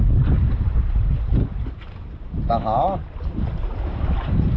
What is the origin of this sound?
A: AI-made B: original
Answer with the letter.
B